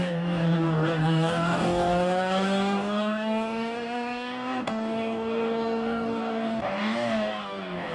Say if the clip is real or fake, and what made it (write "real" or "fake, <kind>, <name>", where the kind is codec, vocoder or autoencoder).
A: fake, codec, DAC